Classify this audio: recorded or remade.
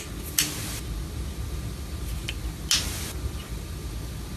recorded